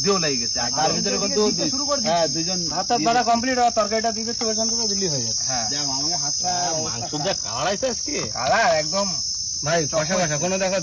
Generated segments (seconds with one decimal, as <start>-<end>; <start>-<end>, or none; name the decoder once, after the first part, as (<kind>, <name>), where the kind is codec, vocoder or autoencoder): 1.2-1.7 (vocoder, BigVGAN v2)